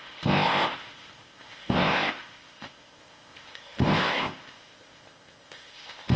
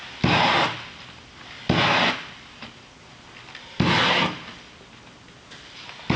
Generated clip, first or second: first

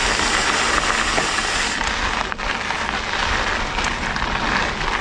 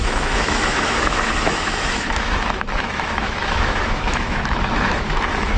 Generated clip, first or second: second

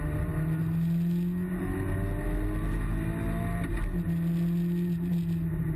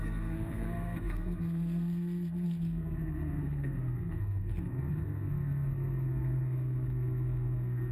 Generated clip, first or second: second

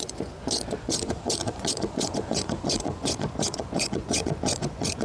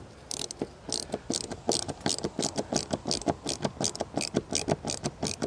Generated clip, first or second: first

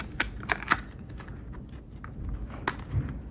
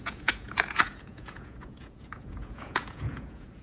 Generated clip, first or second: second